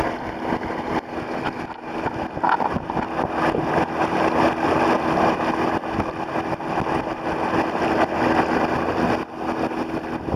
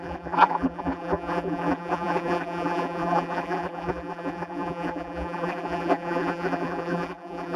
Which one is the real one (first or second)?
first